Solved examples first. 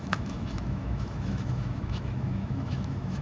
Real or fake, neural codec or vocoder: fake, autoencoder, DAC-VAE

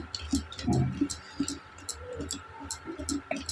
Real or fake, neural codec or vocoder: real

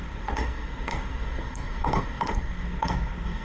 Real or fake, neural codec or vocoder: fake, codec, SNAC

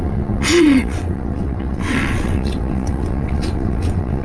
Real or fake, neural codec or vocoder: fake, vocoder, WaveNeXt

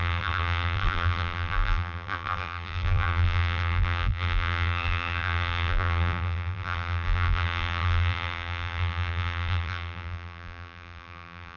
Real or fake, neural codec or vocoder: fake, vocoder, BigVGAN v2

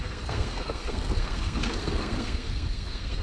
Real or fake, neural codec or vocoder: fake, codec, SNAC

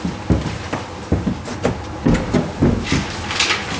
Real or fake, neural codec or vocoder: real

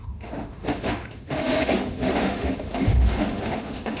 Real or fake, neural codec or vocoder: fake, autoencoder, DAC-VAE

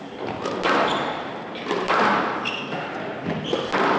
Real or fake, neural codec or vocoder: real